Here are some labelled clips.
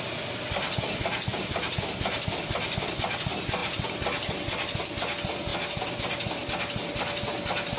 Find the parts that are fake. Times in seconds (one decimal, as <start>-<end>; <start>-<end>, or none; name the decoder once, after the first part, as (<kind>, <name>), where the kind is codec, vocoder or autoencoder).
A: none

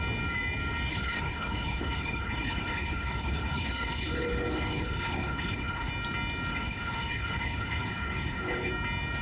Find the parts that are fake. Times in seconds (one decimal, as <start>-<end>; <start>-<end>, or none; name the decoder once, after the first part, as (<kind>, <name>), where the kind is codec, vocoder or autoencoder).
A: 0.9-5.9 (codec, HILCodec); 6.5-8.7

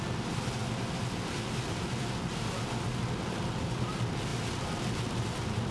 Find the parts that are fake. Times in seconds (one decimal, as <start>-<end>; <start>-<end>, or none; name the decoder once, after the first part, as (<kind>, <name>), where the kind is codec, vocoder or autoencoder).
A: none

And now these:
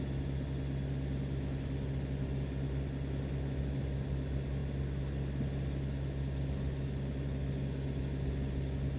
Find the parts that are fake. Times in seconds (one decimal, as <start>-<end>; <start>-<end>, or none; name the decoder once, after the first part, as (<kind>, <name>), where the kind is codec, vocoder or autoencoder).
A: none

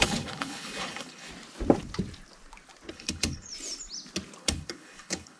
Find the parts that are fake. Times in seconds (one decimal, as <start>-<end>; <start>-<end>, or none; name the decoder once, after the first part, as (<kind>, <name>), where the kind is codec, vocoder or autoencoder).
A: 0.0-1.3 (codec, HILCodec); 2.9-3.5; 4.4-5.4

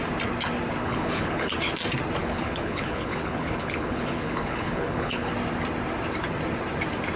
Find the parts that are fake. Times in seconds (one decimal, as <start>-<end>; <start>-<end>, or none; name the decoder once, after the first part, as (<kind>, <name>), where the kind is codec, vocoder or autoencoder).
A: 0.8-1.5 (codec, HILCodec); 2.2-5.3

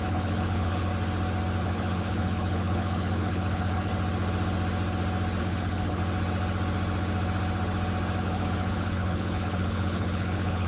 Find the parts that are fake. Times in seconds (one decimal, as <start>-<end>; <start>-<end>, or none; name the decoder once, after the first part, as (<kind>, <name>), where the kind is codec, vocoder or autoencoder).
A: 0.0-0.9 (codec, HILCodec); 1.6-3.9; 5.4-6.0; 8.2-10.7